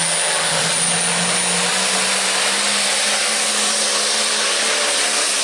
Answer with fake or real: real